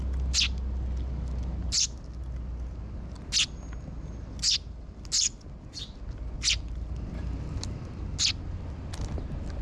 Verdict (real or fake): real